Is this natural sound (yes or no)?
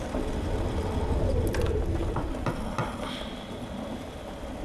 yes